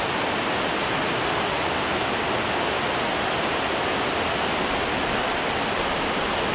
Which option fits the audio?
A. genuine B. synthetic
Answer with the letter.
A